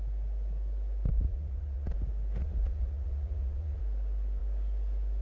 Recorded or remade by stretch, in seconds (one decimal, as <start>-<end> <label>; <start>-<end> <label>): 0.0-1.1 recorded; 1.1-1.9 remade; 1.9-2.4 recorded; 2.4-3.8 remade; 3.8-5.2 recorded